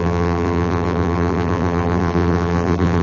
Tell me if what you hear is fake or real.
fake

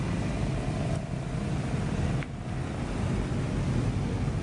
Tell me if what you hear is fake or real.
real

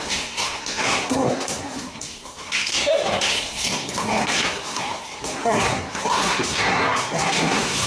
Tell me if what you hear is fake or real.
fake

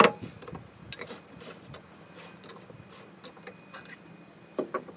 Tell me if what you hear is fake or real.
real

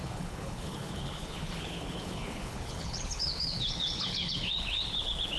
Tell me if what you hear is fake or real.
fake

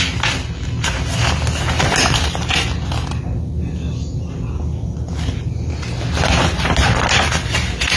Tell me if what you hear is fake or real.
real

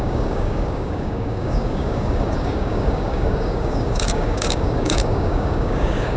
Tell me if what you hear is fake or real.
fake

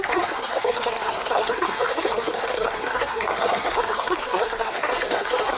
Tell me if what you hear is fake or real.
fake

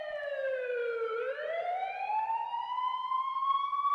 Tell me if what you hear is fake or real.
fake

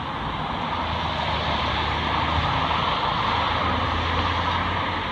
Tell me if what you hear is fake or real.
real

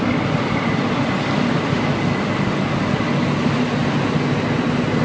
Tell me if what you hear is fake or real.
real